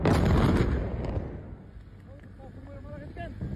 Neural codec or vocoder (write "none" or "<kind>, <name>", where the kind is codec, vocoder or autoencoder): none